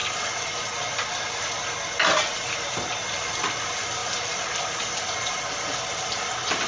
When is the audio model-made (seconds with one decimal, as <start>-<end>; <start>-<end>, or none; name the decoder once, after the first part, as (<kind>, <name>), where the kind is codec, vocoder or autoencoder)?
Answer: none